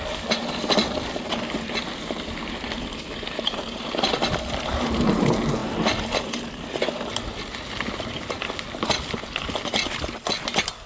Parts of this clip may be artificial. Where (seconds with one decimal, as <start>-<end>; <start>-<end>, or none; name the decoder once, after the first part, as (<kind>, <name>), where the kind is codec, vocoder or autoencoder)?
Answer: none